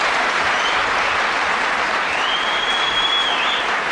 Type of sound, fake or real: fake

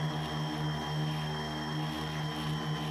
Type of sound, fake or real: real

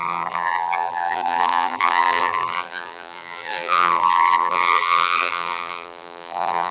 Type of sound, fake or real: fake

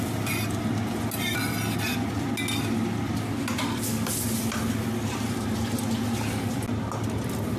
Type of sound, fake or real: real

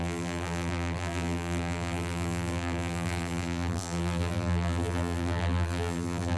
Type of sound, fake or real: fake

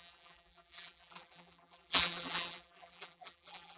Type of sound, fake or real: fake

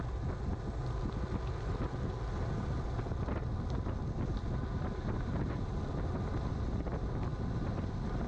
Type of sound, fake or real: real